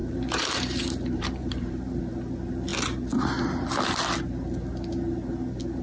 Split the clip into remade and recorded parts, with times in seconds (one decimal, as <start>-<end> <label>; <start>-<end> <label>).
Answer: 0.0-2.0 remade; 2.0-5.8 recorded